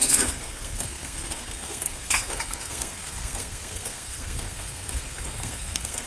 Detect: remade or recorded remade